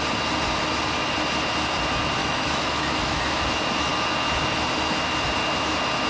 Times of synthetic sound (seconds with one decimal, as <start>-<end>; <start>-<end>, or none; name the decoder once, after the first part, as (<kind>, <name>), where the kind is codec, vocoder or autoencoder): 2.2-3.4 (autoencoder, DAC-VAE)